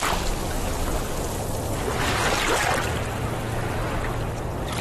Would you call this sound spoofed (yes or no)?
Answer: no